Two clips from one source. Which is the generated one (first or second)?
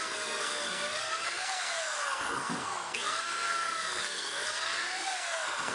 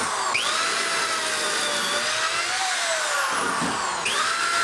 first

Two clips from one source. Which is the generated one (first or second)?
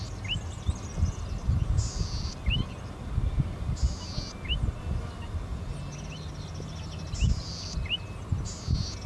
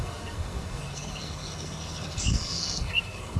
second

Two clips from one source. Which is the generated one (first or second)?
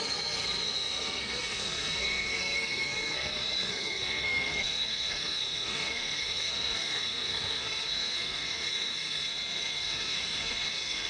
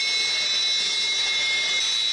first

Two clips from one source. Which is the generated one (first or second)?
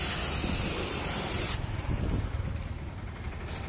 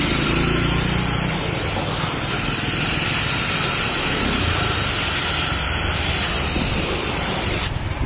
second